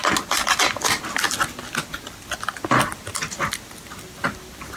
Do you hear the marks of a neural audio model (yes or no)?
no